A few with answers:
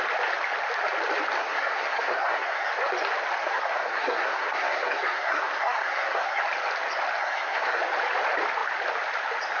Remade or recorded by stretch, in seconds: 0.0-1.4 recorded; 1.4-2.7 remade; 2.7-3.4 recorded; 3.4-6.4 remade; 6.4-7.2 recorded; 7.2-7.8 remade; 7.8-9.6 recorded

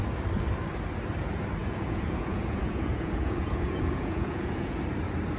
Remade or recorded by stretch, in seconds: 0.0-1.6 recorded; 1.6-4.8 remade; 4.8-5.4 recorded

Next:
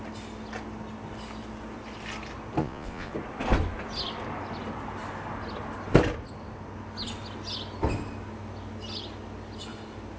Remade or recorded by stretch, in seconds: 0.0-2.6 recorded; 2.6-3.1 remade; 3.1-10.2 recorded

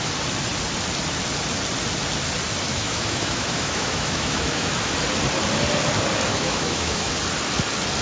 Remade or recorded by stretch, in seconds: 0.0-2.7 recorded; 2.7-4.9 remade; 4.9-6.3 recorded; 6.3-7.1 remade; 7.1-8.0 recorded

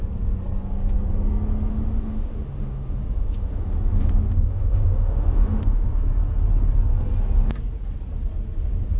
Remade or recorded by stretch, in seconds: 0.0-1.7 recorded; 1.7-5.9 remade; 5.9-9.0 recorded

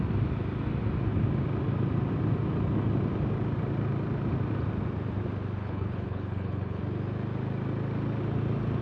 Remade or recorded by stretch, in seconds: 0.0-5.6 recorded; 5.6-6.8 remade; 6.8-8.8 recorded